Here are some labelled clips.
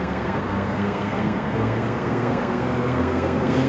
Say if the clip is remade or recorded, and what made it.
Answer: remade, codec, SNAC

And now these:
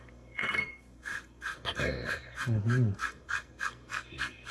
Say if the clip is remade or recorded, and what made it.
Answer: remade, codec, SNAC